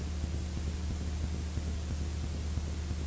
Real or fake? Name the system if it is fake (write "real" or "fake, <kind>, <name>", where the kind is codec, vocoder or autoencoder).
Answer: real